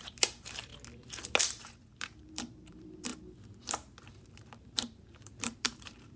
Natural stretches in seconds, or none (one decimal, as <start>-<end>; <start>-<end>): 0.7-1.4; 3.1-4.1